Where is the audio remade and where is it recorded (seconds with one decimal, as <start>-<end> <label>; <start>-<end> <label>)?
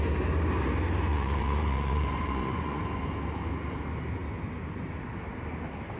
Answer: 0.0-1.1 recorded; 1.1-2.8 remade; 2.8-6.0 recorded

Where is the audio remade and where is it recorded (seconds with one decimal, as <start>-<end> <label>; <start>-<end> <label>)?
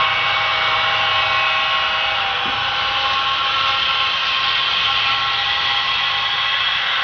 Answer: 0.0-7.0 recorded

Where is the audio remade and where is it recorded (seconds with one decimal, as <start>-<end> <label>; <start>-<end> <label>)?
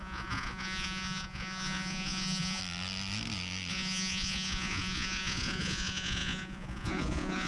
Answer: 0.0-2.6 remade; 2.6-3.7 recorded; 3.7-7.5 remade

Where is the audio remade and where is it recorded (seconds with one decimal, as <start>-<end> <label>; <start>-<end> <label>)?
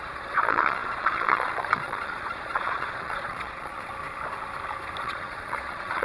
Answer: 0.0-3.9 remade; 3.9-5.0 recorded; 5.0-6.0 remade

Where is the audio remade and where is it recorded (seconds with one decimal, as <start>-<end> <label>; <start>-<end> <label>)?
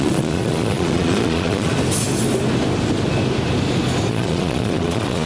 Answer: 0.0-1.7 remade; 1.7-4.1 recorded; 4.1-5.3 remade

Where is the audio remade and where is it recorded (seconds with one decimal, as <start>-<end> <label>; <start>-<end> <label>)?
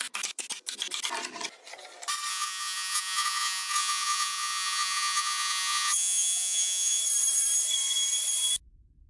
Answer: 0.0-2.3 recorded; 2.3-7.0 remade; 7.0-9.1 recorded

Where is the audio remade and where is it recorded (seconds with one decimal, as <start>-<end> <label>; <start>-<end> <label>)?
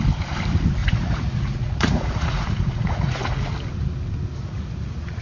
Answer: 0.0-0.8 recorded; 0.8-3.5 remade; 3.5-4.4 recorded; 4.4-5.2 remade